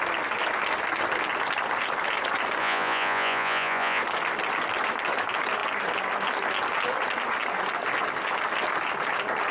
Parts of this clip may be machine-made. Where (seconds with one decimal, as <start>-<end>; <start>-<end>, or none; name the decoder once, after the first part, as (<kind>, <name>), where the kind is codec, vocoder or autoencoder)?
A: 2.6-4.0 (vocoder, Vocos)